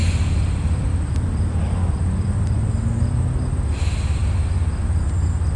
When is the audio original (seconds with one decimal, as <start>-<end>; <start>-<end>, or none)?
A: 0.0-5.6